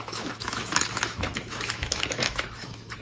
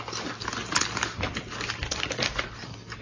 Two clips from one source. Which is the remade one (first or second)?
first